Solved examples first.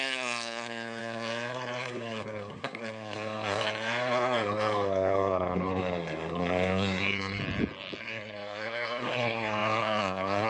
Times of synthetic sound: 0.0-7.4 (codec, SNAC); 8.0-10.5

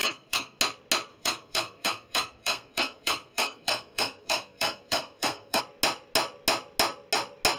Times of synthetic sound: 0.0-0.6 (codec, SNAC); 1.1-5.6

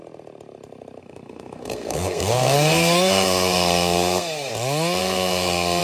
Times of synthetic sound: 1.0-4.5 (codec, SNAC); 5.0-5.8

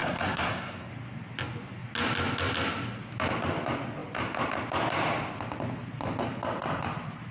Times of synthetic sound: 0.0-0.9 (codec, SNAC)

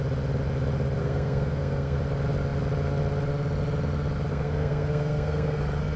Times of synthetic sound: 1.0-2.0 (codec, SNAC); 4.3-5.6

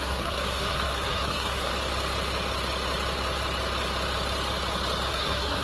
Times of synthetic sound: 0.0-1.7 (codec, SNAC); 5.1-5.6

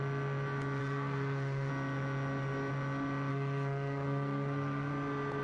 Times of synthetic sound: 0.8-1.7 (codec, SNAC); 3.3-4.9

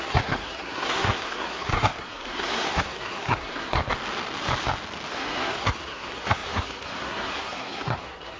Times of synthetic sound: 0.0-3.8 (codec, SNAC); 5.1-8.4